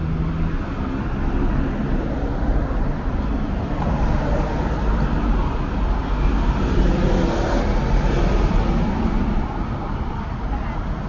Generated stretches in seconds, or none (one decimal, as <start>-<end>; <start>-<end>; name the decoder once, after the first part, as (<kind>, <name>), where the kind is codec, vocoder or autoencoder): 1.9-2.9 (vocoder, BigVGAN v2)